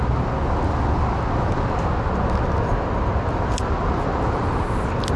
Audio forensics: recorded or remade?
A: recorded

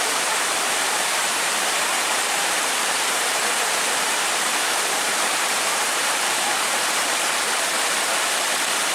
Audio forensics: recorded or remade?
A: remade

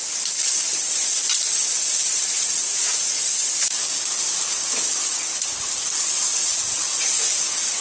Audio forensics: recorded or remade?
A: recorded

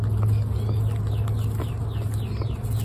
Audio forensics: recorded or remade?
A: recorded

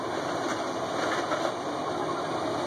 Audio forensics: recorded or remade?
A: recorded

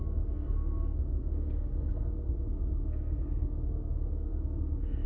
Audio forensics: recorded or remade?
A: remade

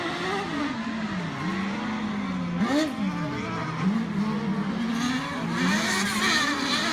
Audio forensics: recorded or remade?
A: recorded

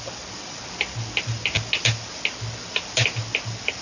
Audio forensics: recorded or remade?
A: recorded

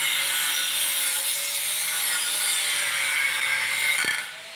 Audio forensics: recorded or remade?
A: remade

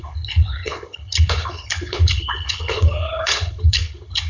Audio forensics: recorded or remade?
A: remade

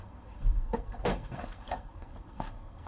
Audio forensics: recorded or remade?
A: remade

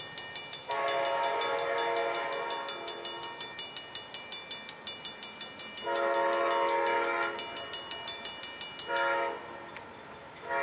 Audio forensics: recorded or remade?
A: recorded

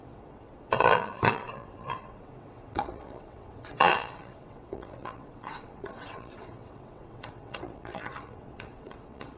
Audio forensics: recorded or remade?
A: remade